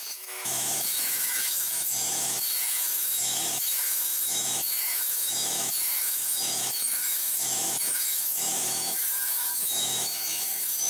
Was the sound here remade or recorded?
remade